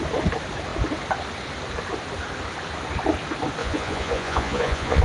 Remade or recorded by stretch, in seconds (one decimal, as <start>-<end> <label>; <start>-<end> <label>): 0.0-3.6 recorded; 3.6-5.0 remade